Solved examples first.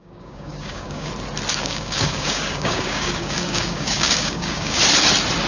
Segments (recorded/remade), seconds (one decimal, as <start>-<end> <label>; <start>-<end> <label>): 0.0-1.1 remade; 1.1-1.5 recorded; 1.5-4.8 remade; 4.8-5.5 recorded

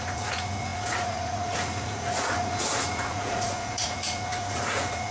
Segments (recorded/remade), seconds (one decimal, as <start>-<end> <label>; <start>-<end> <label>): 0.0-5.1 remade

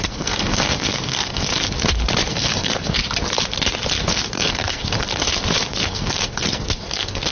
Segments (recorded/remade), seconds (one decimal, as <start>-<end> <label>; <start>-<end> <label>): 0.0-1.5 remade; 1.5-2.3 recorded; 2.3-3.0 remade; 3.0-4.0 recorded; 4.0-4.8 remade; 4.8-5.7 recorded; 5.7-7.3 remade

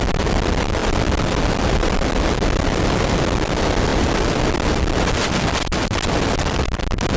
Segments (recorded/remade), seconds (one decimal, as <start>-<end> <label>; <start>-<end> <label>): 0.0-7.2 remade

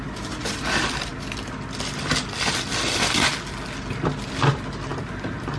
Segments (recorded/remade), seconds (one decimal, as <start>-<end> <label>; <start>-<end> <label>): 0.0-5.6 recorded

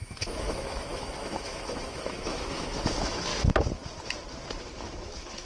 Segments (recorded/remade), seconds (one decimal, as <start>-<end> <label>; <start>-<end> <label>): 0.0-3.3 remade; 3.3-4.6 recorded; 4.6-5.5 remade

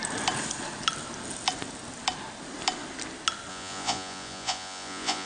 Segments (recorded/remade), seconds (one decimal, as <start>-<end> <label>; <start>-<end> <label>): 0.0-3.5 recorded; 3.5-5.3 remade